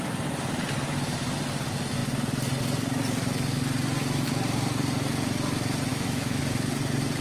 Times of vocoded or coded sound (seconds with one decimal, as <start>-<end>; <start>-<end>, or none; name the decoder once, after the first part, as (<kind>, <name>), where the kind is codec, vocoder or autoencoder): 5.9-6.4 (autoencoder, DAC-VAE)